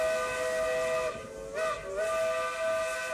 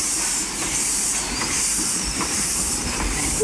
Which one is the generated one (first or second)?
second